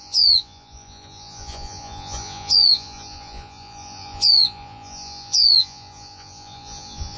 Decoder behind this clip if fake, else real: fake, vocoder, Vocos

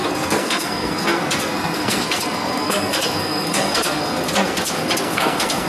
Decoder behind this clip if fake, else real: fake, codec, SNAC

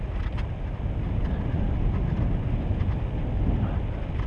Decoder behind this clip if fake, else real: real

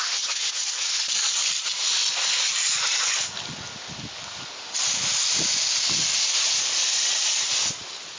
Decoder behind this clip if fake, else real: real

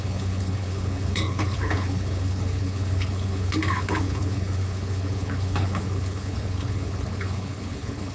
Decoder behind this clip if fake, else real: fake, codec, HILCodec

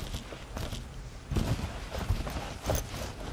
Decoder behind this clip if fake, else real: real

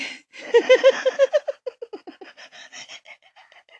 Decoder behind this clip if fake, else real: real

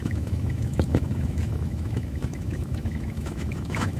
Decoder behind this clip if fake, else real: fake, autoencoder, DAC-VAE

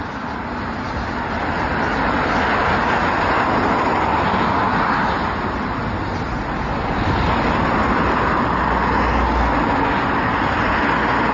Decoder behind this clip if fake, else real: real